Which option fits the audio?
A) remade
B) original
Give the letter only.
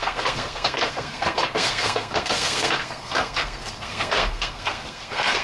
A